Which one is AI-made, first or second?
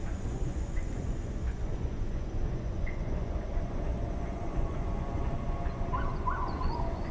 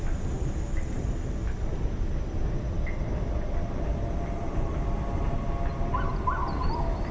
first